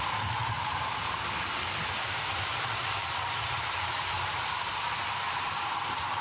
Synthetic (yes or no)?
no